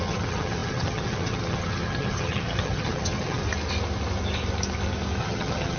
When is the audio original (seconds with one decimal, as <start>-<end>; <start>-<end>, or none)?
3.4-5.2